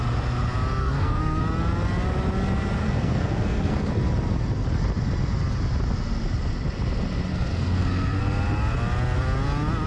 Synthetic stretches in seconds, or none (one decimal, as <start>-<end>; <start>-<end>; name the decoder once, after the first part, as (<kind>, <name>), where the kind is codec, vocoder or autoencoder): 0.8-1.4 (codec, SNAC); 2.8-3.9; 7.3-8.2